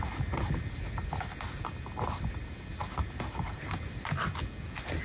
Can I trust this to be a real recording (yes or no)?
yes